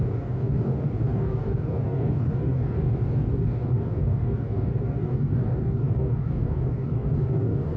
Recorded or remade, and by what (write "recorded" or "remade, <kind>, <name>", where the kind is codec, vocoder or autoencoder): remade, codec, DAC